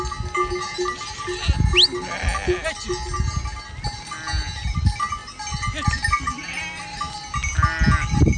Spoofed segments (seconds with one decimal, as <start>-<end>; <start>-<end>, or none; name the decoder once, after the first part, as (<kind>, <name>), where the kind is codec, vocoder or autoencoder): none